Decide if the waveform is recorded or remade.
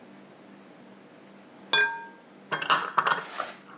recorded